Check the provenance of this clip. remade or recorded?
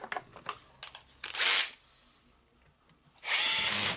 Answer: recorded